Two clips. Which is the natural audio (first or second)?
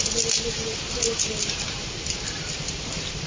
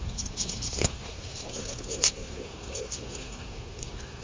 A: first